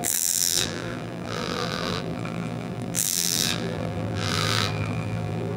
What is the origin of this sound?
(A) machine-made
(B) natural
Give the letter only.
A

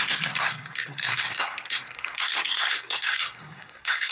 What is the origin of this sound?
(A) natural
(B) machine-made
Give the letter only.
B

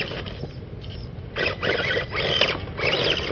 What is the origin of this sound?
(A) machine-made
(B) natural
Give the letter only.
B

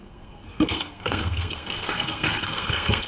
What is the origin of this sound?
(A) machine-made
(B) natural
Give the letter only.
A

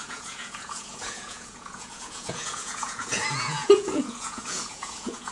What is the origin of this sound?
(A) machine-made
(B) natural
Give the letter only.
A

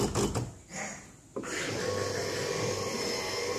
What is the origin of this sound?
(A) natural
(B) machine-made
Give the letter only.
A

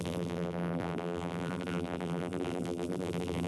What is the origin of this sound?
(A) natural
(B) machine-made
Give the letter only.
B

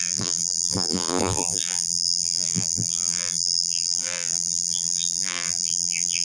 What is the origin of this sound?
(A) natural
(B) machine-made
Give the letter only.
B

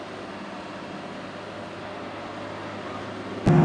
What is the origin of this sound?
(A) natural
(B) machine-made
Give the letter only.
A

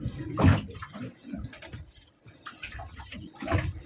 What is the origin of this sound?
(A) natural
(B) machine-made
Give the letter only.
A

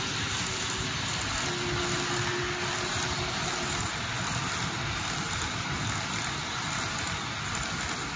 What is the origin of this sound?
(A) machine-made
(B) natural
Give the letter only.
B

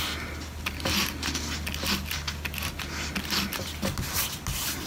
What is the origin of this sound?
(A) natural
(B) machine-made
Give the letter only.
A